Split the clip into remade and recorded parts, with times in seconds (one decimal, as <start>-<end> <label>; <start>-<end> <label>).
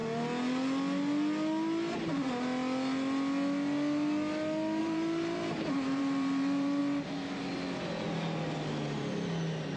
0.0-4.8 recorded; 4.8-6.8 remade; 6.8-9.8 recorded